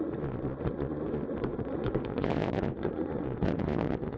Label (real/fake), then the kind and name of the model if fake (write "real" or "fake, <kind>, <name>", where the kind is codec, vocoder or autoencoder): fake, vocoder, Vocos